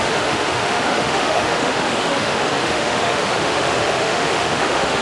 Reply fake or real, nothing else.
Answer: fake